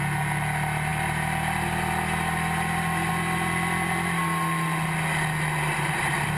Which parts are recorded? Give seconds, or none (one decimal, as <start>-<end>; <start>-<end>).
0.0-6.4